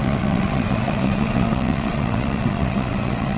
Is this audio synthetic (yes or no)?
yes